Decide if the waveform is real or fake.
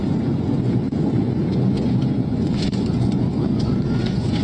fake